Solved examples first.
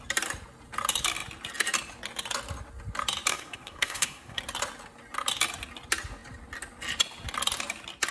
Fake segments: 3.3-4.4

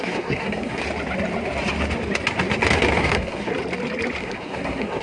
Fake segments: 0.0-0.8; 3.0-3.5; 4.2-5.0